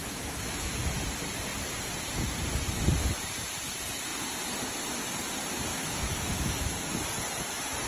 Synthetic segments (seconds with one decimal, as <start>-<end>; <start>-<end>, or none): 0.0-0.7; 5.7-6.9